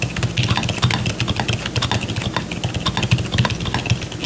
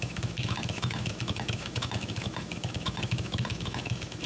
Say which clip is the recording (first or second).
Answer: first